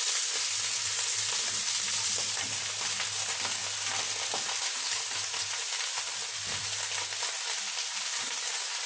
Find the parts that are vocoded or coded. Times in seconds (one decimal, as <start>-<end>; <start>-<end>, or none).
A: none